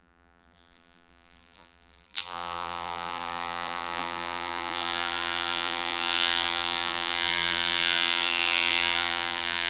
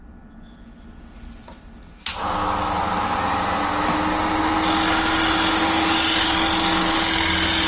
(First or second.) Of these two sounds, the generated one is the first